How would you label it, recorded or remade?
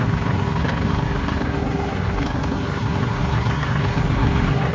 remade